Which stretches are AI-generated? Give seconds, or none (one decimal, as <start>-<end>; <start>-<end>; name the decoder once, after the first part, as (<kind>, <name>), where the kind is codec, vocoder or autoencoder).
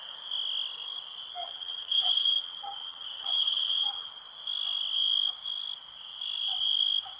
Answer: 1.4-4.1 (vocoder, HiFi-GAN)